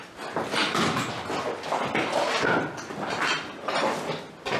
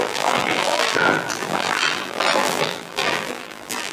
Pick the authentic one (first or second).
first